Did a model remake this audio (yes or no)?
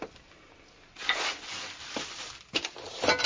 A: no